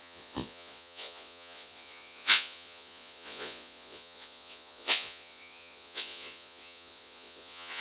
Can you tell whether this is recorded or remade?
remade